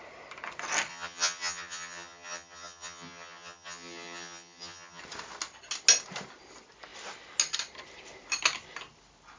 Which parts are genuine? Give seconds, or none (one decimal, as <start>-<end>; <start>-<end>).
0.0-0.9; 5.0-9.4